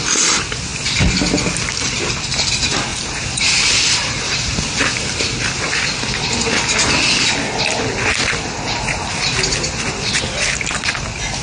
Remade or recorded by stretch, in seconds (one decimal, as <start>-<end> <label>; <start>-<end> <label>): 0.0-2.9 recorded; 2.9-5.4 remade; 5.4-11.4 recorded